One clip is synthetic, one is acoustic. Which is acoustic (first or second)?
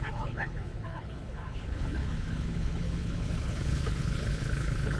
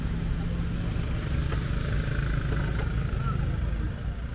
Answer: second